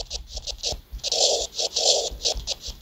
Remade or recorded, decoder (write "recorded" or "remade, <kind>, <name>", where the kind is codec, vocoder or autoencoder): recorded